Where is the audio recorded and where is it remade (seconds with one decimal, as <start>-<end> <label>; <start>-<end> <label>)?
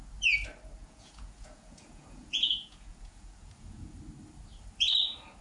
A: 0.0-0.8 recorded; 0.8-3.9 remade; 3.9-5.4 recorded